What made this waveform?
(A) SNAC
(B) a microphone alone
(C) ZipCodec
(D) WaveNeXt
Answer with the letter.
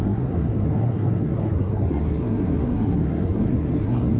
A